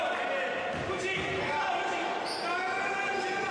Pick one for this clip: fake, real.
real